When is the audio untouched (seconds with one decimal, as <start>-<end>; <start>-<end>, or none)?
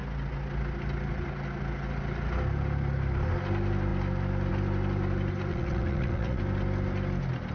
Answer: 0.0-5.5; 6.4-7.5